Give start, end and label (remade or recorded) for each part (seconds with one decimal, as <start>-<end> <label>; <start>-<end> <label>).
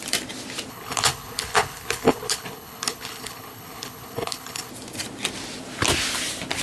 0.0-0.7 recorded; 0.7-4.7 remade; 4.7-6.6 recorded